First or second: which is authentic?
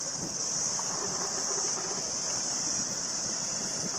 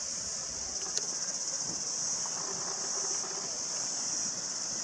second